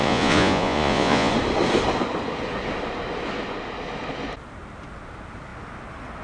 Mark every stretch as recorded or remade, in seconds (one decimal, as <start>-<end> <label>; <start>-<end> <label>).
0.0-1.3 remade; 1.3-6.2 recorded